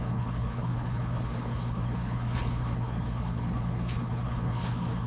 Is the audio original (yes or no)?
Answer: no